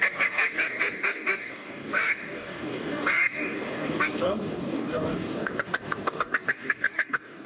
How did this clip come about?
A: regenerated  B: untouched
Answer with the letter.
A